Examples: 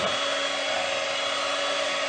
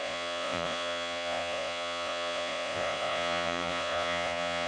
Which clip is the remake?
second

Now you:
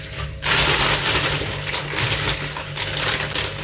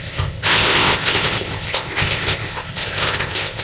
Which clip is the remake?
second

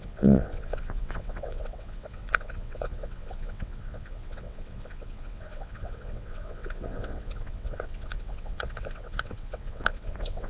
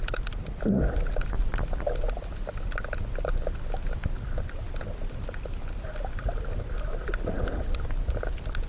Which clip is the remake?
first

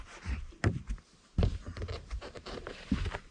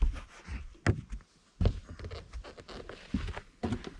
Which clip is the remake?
first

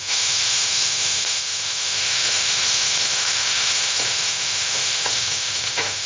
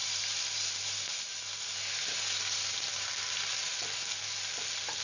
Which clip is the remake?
first